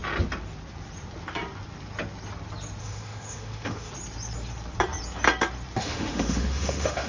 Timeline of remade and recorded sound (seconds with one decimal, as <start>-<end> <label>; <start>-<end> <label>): 0.0-2.8 recorded; 2.8-3.9 remade; 3.9-5.8 recorded; 5.8-7.1 remade